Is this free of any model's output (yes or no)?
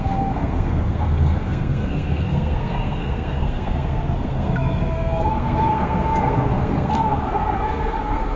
no